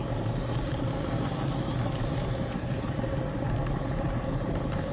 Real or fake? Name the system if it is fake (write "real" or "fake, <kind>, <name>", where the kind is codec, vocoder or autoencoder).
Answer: real